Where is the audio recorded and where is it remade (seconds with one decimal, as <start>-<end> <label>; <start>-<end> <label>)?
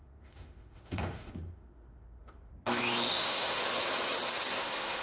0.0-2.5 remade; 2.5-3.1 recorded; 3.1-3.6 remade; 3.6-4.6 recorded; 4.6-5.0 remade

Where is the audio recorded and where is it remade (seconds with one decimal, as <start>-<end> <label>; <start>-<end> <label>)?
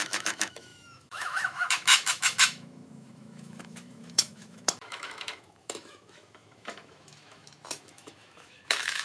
0.0-9.0 remade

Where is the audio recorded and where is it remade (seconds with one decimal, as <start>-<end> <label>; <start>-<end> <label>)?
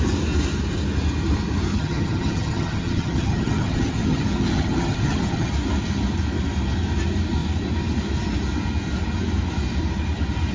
0.0-1.7 recorded; 1.7-5.5 remade; 5.5-10.5 recorded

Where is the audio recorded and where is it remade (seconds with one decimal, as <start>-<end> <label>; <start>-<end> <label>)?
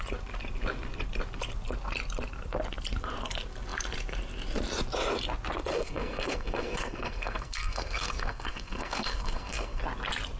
0.0-5.7 recorded; 5.7-9.8 remade; 9.8-10.4 recorded